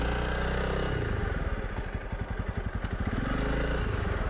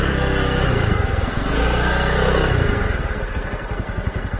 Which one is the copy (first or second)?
second